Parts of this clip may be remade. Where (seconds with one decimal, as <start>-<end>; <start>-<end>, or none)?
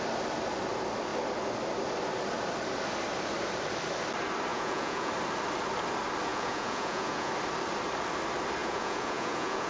4.5-5.1; 6.3-7.3; 8.6-9.7